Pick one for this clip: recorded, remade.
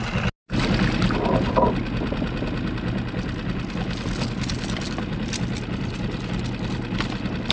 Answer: recorded